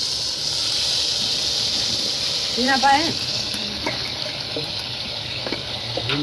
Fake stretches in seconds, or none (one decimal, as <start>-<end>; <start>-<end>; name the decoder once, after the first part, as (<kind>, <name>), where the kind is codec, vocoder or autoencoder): 3.3-5.7 (codec, DAC)